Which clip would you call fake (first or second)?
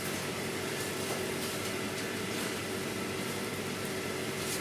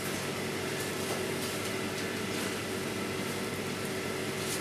first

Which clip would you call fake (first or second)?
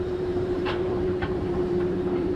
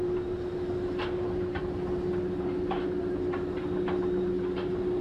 first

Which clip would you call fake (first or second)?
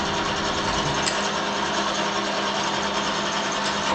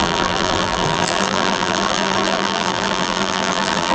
second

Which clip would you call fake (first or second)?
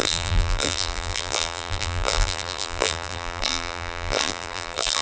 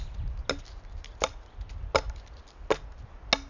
first